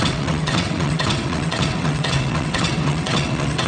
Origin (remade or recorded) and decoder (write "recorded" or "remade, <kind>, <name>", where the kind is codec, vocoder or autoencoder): remade, vocoder, WaveNeXt